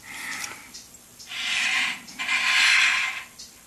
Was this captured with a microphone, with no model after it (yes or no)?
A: no